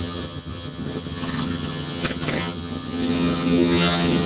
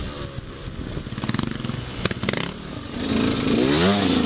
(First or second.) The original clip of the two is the second